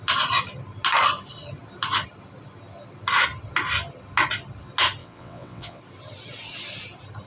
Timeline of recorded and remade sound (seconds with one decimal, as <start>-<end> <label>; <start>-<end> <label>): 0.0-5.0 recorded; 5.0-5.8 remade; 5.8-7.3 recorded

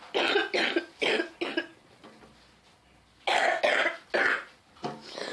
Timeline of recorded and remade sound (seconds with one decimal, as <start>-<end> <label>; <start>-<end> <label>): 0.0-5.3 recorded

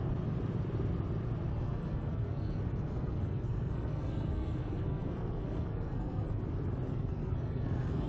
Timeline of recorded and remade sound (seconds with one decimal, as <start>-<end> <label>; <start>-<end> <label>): 0.0-1.5 recorded; 1.5-6.4 remade; 6.4-6.9 recorded; 6.9-8.1 remade